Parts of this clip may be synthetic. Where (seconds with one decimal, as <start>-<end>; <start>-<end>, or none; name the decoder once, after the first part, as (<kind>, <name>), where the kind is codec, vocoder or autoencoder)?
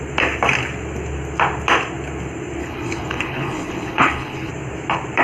2.6-4.5 (codec, HILCodec)